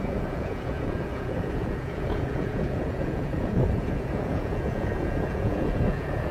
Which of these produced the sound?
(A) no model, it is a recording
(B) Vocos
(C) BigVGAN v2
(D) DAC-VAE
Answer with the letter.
B